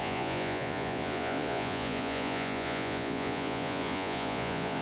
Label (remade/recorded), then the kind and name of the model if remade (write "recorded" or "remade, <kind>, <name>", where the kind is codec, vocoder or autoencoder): remade, vocoder, Vocos